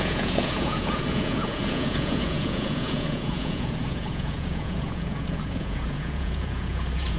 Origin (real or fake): fake